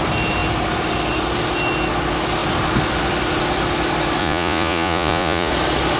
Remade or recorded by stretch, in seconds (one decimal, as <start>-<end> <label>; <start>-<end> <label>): 0.0-4.2 recorded; 4.2-5.5 remade; 5.5-6.0 recorded